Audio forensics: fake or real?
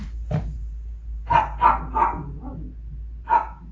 real